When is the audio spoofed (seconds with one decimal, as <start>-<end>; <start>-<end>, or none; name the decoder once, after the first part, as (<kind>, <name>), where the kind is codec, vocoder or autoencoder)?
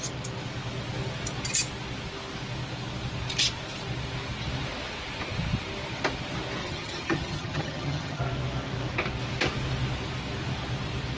6.6-8.2 (vocoder, HiFi-GAN)